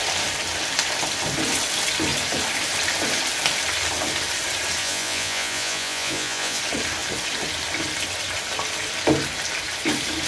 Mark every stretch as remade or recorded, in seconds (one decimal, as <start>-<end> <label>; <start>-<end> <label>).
0.0-4.8 recorded; 4.8-6.6 remade; 6.6-10.3 recorded